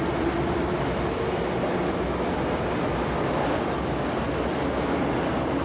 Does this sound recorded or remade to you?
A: recorded